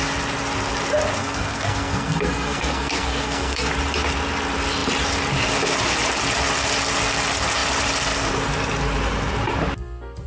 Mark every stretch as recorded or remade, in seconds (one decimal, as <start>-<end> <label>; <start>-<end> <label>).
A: 0.0-1.2 recorded; 1.2-3.7 remade; 3.7-10.3 recorded

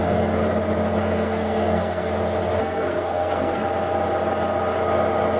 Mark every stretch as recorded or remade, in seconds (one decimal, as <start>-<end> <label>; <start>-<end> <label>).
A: 0.0-0.4 remade; 0.4-1.0 recorded; 1.0-2.1 remade; 2.1-2.6 recorded; 2.6-3.6 remade; 3.6-5.4 recorded

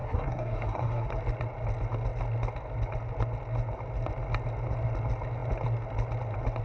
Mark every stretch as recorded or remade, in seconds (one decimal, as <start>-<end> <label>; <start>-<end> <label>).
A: 0.0-1.1 remade; 1.1-6.6 recorded

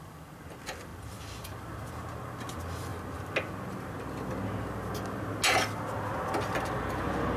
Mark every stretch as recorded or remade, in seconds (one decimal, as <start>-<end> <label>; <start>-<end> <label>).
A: 0.0-7.4 recorded

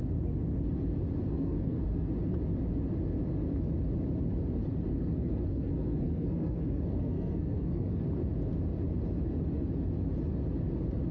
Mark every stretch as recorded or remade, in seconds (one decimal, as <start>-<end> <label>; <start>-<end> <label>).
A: 0.0-1.3 recorded; 1.3-2.1 remade; 2.1-4.9 recorded; 4.9-8.0 remade; 8.0-11.1 recorded

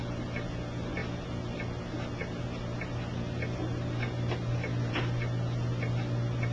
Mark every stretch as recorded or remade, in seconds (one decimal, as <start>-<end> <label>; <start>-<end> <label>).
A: 0.0-6.5 recorded